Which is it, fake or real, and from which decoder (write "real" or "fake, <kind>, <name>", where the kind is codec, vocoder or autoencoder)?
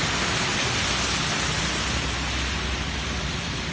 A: real